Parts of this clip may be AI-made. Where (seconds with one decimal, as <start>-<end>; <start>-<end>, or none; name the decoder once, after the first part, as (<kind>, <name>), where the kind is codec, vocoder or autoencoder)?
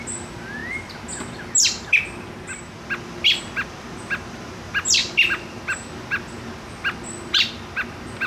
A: none